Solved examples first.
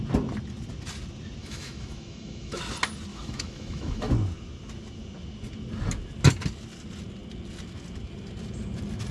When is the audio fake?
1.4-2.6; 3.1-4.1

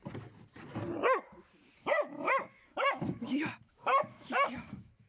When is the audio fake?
1.8-5.1

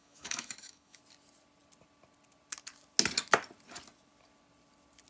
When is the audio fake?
0.0-1.0

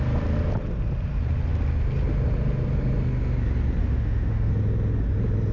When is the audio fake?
3.8-4.5

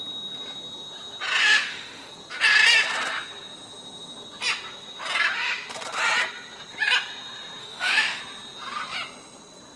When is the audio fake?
1.4-2.1; 7.6-8.2

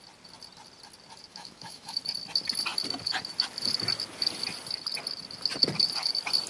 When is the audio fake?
1.3-2.0